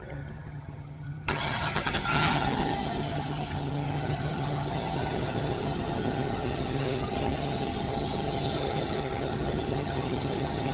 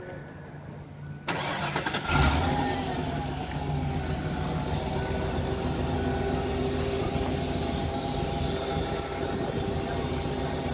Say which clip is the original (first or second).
second